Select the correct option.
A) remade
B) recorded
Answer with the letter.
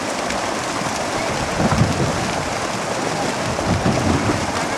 B